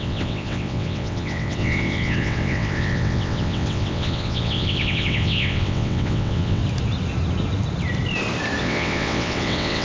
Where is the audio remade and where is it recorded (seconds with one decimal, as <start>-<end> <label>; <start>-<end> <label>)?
0.0-6.6 remade; 6.6-8.6 recorded; 8.6-9.8 remade